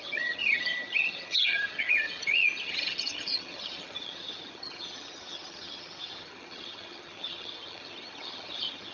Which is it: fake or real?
fake